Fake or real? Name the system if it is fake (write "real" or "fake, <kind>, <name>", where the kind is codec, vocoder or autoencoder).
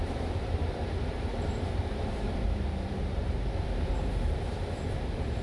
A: fake, vocoder, BigVGAN v2